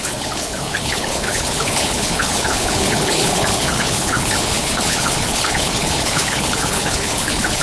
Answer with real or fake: fake